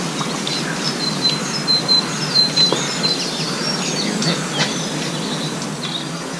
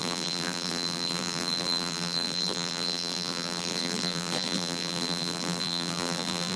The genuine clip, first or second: first